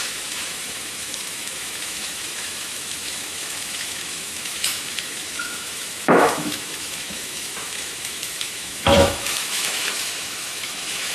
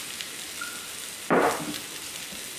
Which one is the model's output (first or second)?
first